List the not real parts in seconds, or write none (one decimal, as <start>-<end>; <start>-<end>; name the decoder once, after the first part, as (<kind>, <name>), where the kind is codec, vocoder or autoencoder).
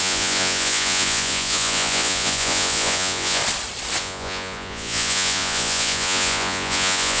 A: 0.0-3.4 (vocoder, Vocos); 4.0-7.2